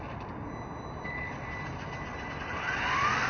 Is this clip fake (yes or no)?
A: yes